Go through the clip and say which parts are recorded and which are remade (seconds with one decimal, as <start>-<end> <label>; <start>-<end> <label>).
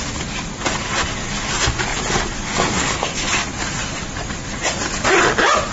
0.0-5.7 recorded